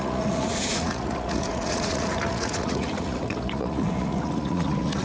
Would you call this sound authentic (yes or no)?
no